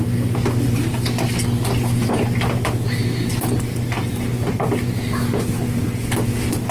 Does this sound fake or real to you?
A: real